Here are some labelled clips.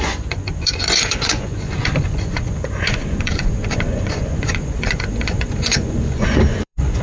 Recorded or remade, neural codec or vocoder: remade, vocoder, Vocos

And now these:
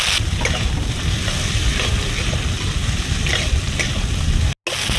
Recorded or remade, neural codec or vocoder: recorded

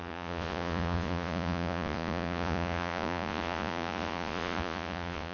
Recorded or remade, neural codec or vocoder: remade, vocoder, Vocos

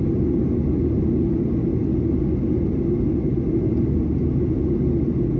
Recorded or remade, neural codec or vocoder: recorded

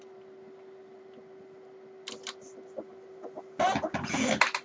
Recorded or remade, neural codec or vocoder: recorded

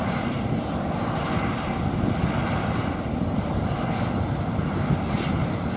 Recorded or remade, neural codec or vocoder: recorded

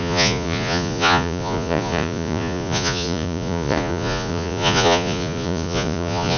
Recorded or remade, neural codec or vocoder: remade, vocoder, Vocos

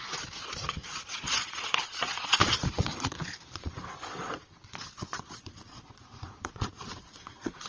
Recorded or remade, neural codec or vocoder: remade, vocoder, Vocos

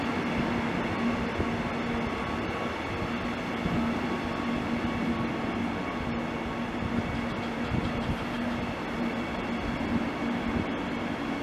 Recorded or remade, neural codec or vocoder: recorded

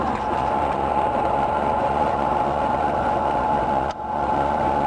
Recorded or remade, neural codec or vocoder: remade, vocoder, Vocos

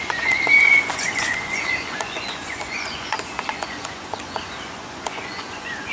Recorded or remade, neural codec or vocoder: remade, vocoder, Vocos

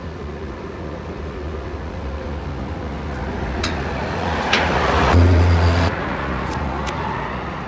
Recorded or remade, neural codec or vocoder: remade, vocoder, Vocos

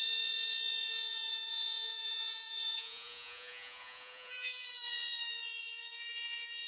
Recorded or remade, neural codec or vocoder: remade, vocoder, Vocos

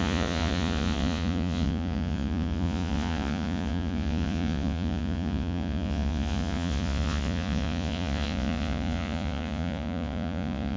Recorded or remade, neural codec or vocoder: remade, vocoder, Vocos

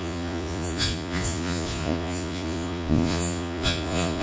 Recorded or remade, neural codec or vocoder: remade, vocoder, Vocos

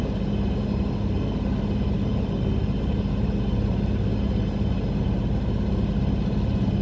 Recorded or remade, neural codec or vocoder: recorded